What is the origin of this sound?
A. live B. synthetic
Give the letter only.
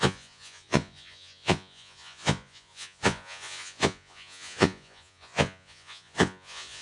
B